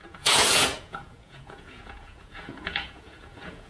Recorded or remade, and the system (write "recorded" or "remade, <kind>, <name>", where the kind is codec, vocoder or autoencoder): remade, vocoder, Vocos